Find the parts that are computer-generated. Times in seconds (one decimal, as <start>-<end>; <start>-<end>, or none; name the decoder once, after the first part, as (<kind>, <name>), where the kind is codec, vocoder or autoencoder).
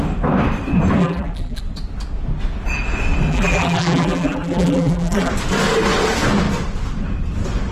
1.0-1.6 (vocoder, BigVGAN v2); 3.3-5.3